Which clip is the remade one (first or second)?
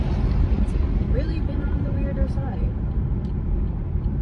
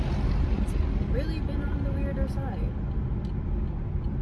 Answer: first